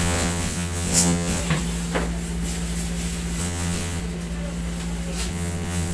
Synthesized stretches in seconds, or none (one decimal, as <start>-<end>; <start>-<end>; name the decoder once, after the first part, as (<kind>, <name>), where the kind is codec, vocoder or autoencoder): 0.0-1.4 (vocoder, WaveNeXt); 3.4-4.0; 5.3-5.9